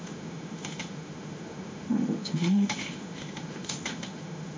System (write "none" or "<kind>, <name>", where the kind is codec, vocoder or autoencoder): autoencoder, DAC-VAE